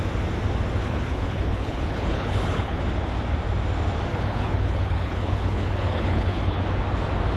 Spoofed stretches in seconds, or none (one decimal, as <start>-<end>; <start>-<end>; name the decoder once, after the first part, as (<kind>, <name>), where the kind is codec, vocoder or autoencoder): 0.8-2.8 (codec, HILCodec); 4.1-6.6